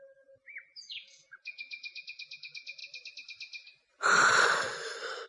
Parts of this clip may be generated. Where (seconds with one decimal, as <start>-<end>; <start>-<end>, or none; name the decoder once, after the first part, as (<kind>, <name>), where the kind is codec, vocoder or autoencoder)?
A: 0.0-2.8 (vocoder, Vocos)